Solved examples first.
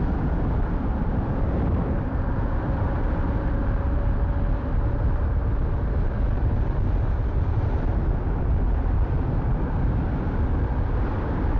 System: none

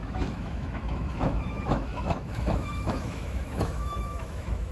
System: autoencoder, DAC-VAE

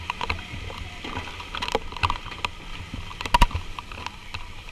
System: none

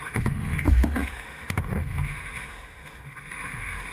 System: autoencoder, DAC-VAE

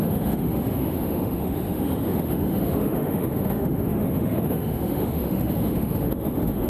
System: autoencoder, DAC-VAE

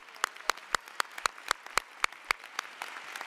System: none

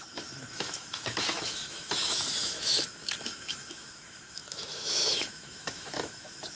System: autoencoder, DAC-VAE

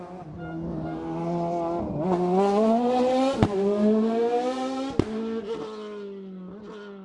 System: none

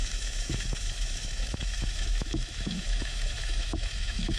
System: autoencoder, DAC-VAE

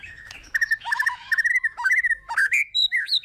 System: autoencoder, DAC-VAE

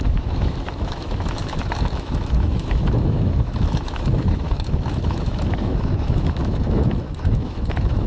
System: autoencoder, DAC-VAE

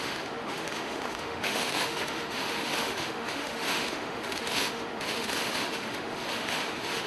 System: autoencoder, DAC-VAE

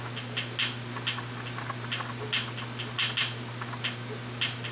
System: none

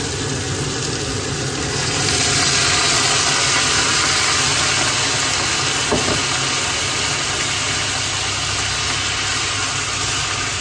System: none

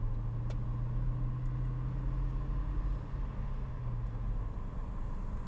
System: none